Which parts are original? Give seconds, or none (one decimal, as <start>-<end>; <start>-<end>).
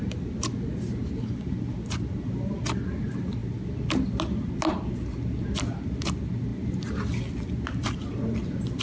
0.0-8.8